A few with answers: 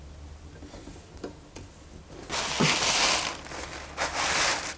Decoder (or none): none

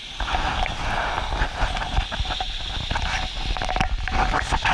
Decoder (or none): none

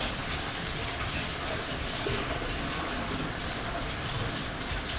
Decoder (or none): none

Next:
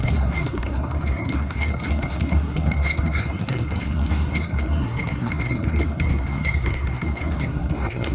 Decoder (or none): codec, SNAC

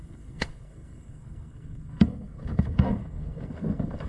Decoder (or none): codec, SNAC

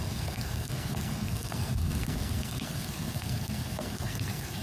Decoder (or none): codec, SNAC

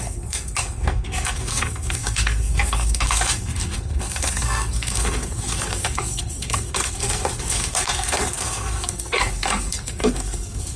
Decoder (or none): codec, SNAC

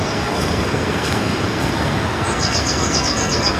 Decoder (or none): codec, SNAC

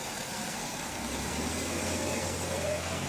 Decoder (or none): codec, SNAC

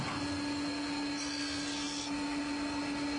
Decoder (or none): none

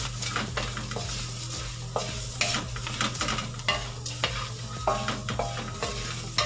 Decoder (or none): none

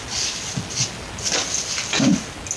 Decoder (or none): none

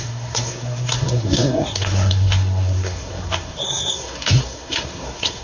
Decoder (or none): codec, SNAC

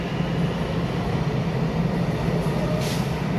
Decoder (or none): none